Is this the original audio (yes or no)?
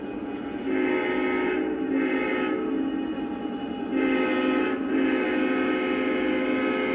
yes